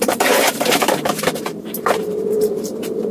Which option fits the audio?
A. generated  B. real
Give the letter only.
A